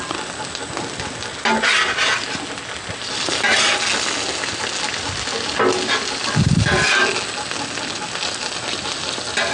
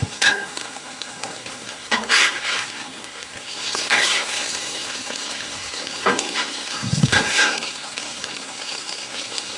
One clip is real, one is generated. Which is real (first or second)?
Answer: first